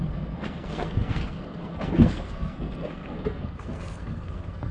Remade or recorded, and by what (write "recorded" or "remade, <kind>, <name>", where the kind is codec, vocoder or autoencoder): remade, codec, SNAC